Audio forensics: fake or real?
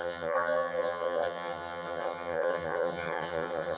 fake